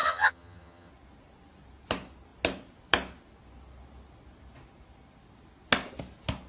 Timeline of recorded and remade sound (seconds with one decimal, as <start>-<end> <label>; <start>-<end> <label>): 0.0-0.9 remade; 0.9-6.5 recorded